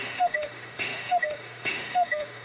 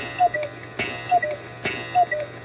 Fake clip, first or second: first